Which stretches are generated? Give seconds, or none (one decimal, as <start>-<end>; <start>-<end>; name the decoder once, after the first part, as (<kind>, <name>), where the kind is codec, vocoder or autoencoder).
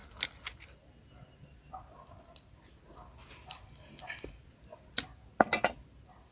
none